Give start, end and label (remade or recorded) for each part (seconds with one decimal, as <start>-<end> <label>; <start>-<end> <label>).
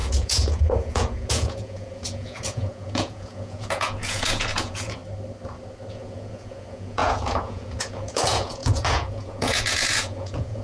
0.0-5.0 remade; 5.0-5.9 recorded; 5.9-10.6 remade